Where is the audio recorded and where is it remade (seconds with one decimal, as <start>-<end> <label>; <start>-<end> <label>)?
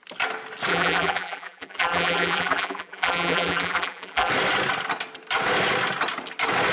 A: 0.0-0.7 recorded; 0.7-4.3 remade; 4.3-6.7 recorded